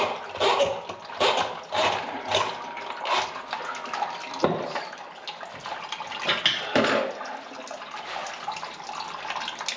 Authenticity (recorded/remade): recorded